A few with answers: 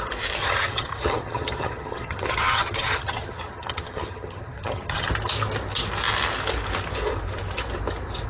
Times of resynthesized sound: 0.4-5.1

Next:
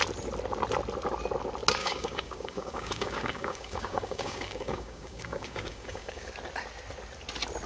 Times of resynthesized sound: 1.8-6.3